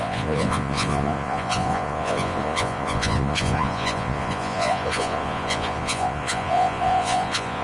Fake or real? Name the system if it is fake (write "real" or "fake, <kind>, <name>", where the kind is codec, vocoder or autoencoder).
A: fake, vocoder, Vocos